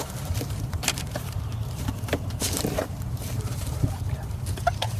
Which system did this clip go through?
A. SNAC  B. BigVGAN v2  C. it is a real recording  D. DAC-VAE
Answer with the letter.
B